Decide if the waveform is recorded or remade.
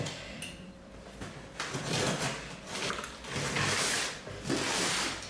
recorded